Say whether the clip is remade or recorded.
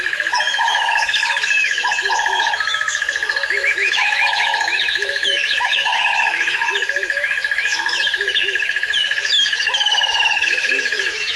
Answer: remade